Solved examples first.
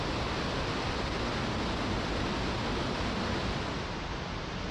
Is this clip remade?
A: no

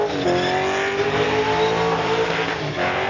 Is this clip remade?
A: no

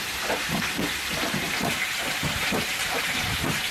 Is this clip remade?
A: yes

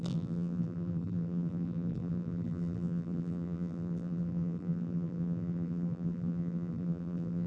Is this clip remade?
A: yes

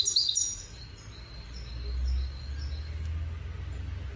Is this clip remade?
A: no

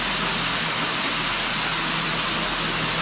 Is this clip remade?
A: no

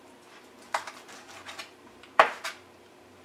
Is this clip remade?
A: yes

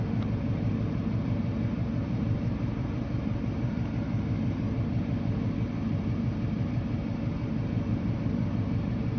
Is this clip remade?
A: yes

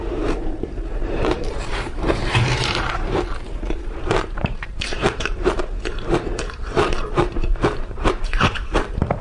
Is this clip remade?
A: yes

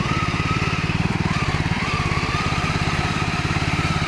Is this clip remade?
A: yes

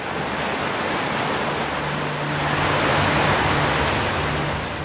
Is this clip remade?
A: no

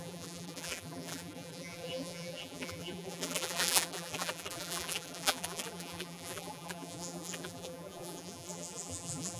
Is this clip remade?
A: yes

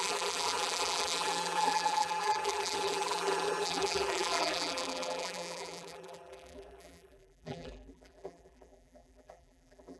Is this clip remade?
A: yes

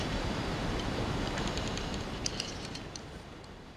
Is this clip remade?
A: yes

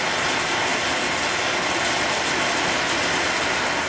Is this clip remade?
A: no